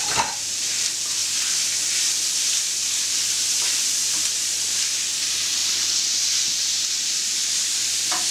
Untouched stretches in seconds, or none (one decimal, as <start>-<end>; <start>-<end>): 1.2-3.1; 5.6-7.0